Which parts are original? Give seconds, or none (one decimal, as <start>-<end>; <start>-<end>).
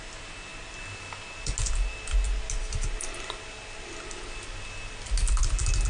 0.0-5.9